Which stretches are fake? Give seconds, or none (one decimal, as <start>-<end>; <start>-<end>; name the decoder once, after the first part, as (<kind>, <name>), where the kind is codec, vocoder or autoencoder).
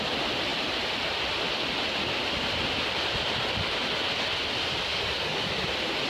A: 4.9-5.5 (codec, DAC)